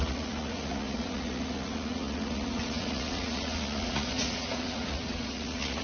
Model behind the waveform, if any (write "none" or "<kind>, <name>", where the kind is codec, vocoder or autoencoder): vocoder, Vocos